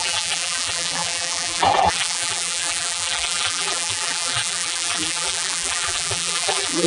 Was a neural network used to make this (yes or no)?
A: yes